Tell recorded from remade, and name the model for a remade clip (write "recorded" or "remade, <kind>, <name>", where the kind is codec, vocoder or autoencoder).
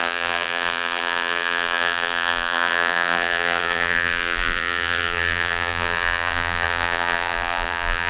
remade, vocoder, BigVGAN v2